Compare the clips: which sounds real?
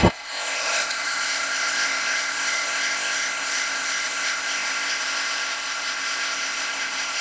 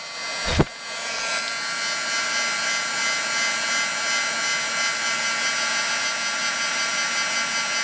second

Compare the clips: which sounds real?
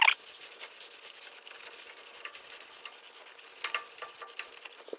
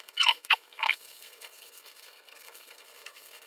first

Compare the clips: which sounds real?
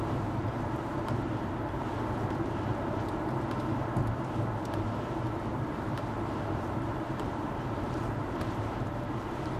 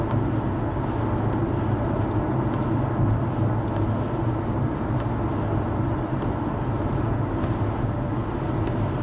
second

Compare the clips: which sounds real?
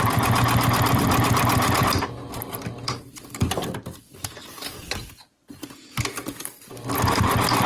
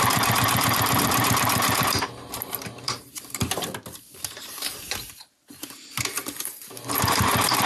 first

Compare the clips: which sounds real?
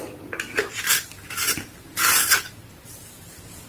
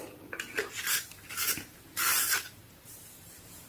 first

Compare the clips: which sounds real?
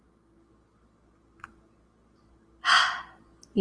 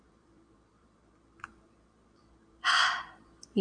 first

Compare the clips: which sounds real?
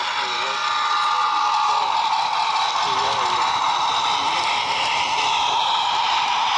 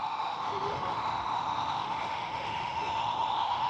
first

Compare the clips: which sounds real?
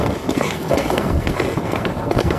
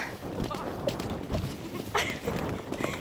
second